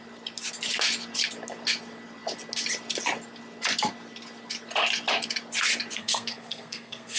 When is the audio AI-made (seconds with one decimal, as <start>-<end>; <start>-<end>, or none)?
6.0-7.2